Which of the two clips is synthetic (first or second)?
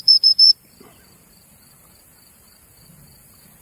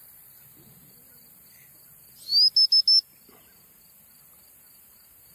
first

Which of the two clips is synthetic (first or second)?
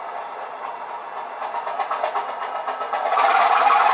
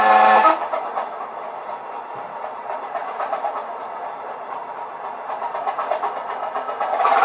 second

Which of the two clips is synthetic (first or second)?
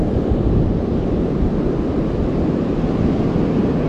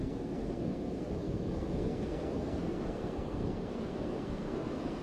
second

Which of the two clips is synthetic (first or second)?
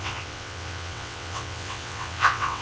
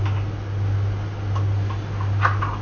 first